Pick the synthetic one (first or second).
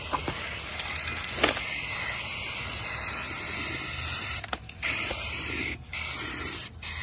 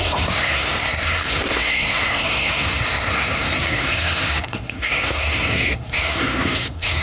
second